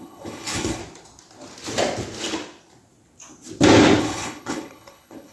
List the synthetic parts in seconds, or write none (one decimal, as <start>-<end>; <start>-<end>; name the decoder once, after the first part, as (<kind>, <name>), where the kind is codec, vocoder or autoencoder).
0.0-0.8 (codec, HILCodec); 4.0-5.3